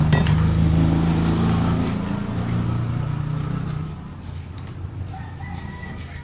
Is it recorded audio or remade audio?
recorded